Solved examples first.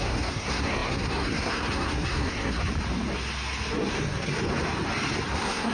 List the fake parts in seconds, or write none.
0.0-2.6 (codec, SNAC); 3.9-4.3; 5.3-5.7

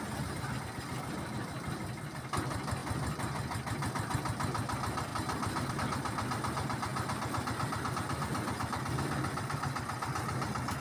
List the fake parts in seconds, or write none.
none